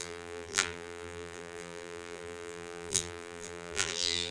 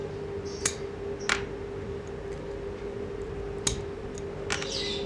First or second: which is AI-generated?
first